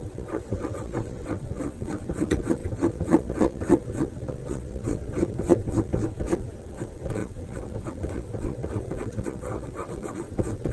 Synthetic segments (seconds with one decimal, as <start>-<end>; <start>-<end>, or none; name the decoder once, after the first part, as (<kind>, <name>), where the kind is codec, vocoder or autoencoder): 0.0-10.7 (vocoder, WaveNeXt)